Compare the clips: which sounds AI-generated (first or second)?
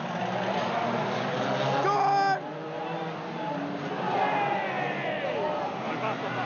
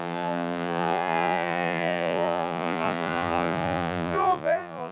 second